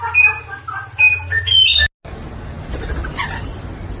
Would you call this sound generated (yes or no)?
no